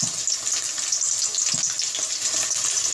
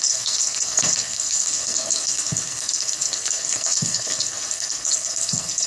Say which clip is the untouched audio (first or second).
first